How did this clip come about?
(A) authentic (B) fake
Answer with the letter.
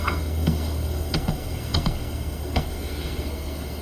B